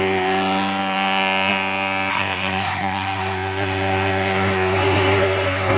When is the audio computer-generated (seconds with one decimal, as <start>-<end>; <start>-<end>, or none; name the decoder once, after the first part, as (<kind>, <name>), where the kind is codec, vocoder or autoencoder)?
2.1-5.8 (codec, SNAC)